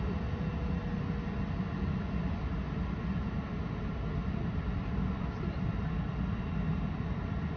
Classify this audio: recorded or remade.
recorded